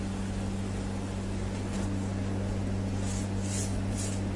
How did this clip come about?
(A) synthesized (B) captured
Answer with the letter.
B